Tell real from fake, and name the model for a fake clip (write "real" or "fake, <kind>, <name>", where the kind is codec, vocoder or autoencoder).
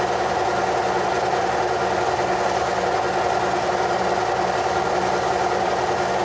real